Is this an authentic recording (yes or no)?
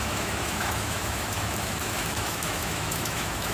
no